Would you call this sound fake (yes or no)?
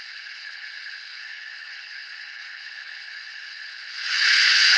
yes